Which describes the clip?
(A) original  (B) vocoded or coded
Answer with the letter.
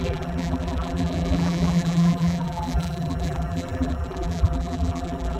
B